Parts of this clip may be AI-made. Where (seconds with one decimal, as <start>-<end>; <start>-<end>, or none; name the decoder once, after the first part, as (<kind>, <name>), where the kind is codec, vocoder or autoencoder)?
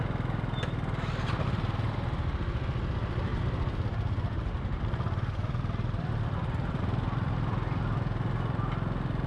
3.3-6.8 (vocoder, BigVGAN v2)